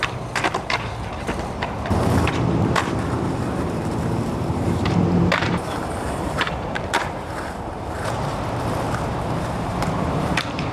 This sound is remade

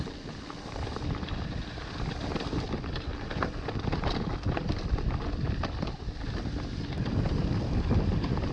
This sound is recorded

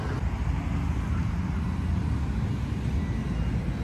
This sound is recorded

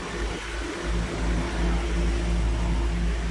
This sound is recorded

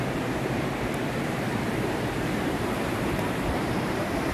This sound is remade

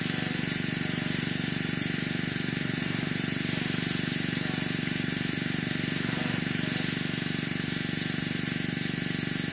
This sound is remade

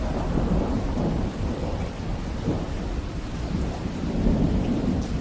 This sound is remade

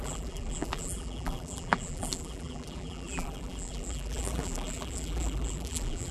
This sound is remade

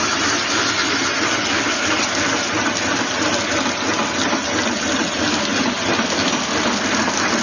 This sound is recorded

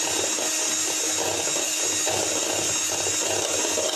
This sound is recorded